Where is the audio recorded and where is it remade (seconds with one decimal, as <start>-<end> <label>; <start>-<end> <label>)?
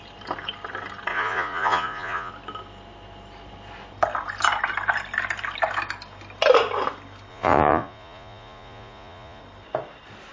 0.0-1.1 recorded; 1.1-2.3 remade; 2.3-7.3 recorded; 7.3-9.4 remade; 9.4-10.3 recorded